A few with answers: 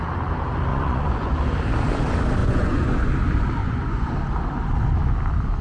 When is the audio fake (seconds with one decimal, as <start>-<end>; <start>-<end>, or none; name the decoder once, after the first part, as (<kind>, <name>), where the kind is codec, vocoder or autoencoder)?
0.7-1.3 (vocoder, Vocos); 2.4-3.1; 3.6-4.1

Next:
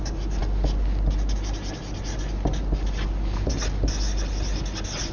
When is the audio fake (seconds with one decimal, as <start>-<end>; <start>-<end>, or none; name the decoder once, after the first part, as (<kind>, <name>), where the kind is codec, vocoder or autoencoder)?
none

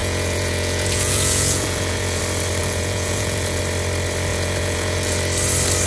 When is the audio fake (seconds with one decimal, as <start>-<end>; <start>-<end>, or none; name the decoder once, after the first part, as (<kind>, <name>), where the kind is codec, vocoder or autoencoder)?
0.0-2.2 (vocoder, Vocos); 2.6-3.6; 4.3-5.2

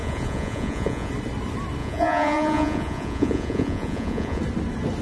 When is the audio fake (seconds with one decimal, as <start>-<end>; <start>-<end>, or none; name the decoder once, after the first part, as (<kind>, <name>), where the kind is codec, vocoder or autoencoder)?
0.0-1.1 (vocoder, Vocos); 1.8-4.4

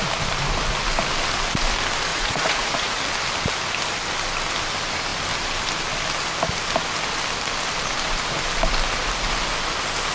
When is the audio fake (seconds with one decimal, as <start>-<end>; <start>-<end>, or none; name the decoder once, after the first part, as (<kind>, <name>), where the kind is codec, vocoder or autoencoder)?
2.1-3.0 (vocoder, Vocos)

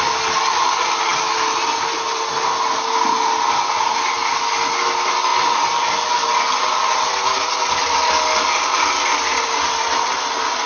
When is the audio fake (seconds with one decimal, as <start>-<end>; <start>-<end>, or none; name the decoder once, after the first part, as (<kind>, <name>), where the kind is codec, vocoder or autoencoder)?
none

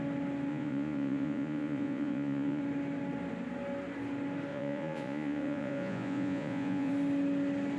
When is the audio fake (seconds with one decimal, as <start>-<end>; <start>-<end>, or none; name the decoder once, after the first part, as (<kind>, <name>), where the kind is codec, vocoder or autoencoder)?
0.5-2.6 (vocoder, Vocos); 4.5-6.9